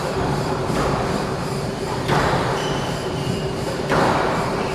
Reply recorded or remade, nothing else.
remade